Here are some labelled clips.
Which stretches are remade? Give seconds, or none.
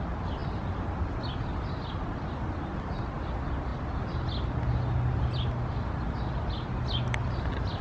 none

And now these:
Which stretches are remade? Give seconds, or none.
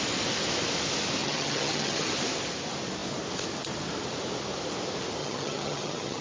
1.2-2.1 (vocoder, HiFi-GAN); 5.2-6.2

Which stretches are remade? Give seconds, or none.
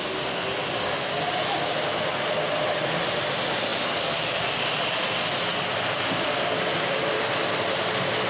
none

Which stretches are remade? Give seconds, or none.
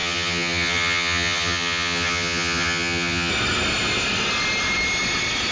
0.0-3.3 (vocoder, HiFi-GAN)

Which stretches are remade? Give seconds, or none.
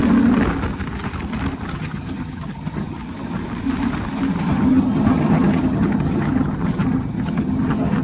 1.7-3.0 (vocoder, HiFi-GAN); 4.5-8.0